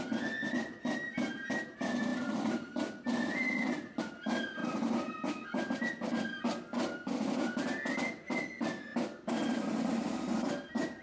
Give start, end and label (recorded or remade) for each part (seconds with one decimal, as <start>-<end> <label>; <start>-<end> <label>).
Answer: 0.0-11.0 recorded